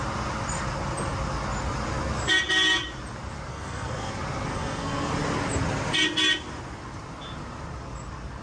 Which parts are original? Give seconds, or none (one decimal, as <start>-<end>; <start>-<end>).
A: 0.0-3.5; 4.1-4.5; 5.1-8.4